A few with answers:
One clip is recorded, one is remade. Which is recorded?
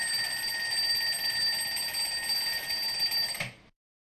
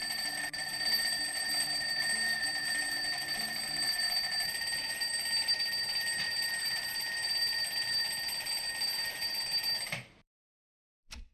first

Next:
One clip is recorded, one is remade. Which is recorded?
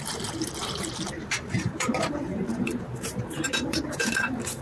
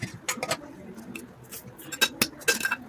second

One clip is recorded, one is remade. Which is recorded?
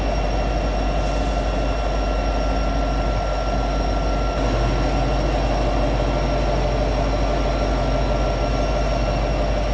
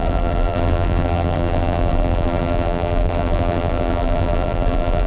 first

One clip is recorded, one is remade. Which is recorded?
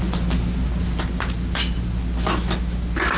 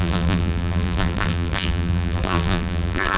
first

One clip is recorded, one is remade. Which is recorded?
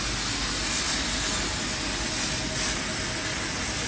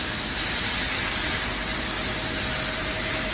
first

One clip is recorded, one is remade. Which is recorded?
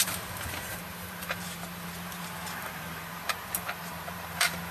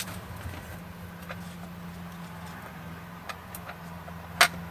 second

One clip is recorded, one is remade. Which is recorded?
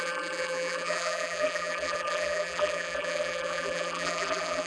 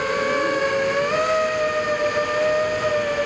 second